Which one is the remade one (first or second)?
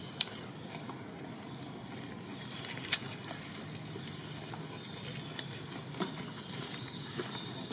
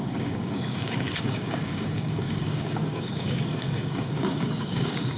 second